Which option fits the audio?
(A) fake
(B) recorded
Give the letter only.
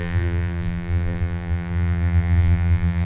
A